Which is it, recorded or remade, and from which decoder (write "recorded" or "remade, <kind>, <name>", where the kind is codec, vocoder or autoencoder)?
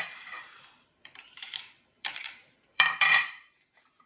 remade, vocoder, BigVGAN v2